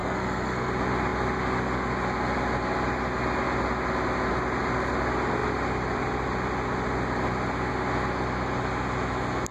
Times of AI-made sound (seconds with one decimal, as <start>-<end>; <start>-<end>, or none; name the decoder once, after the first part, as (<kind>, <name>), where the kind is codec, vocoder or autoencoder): 0.0-0.7 (codec, SNAC)